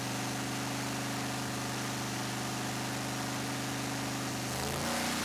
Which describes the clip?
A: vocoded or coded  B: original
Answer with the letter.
B